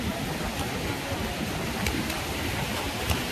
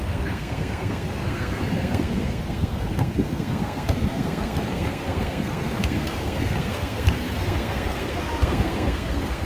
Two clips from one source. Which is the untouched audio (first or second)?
first